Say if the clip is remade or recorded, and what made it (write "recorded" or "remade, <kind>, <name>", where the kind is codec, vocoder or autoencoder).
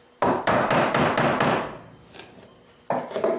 remade, vocoder, BigVGAN v2